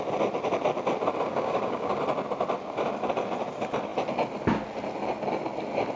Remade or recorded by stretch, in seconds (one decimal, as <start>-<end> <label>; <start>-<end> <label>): 0.0-1.3 recorded; 1.3-2.0 remade; 2.0-6.0 recorded